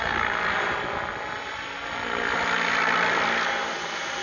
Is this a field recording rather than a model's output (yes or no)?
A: yes